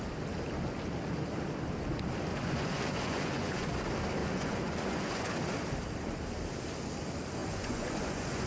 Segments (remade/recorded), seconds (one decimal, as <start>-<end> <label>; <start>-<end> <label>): 0.0-2.3 recorded; 2.3-3.7 remade; 3.7-4.2 recorded; 4.2-5.3 remade; 5.3-7.4 recorded; 7.4-8.5 remade